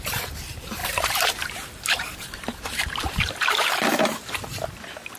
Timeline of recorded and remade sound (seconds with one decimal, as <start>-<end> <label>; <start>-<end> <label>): 0.0-0.8 recorded; 0.8-3.9 remade; 3.9-5.2 recorded